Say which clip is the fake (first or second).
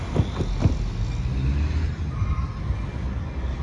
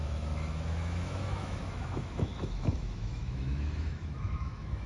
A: second